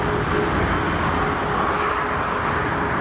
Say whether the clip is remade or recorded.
recorded